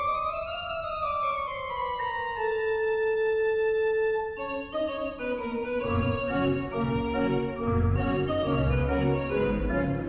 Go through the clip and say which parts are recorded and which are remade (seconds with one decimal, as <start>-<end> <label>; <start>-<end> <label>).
0.0-1.8 remade; 1.8-4.8 recorded; 4.8-8.8 remade; 8.8-9.6 recorded; 9.6-10.1 remade